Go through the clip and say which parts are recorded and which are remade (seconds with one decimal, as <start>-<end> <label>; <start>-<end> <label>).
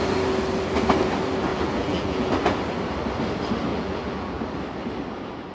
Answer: 0.0-1.5 recorded; 1.5-2.3 remade; 2.3-3.7 recorded; 3.7-4.4 remade; 4.4-5.5 recorded